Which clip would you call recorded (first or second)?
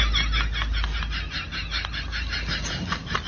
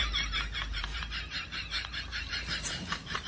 first